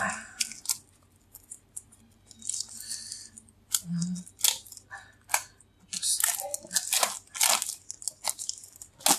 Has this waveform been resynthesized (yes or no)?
no